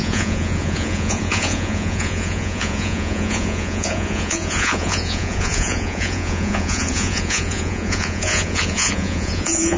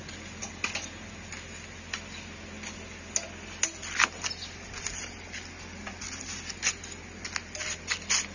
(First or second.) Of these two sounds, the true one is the second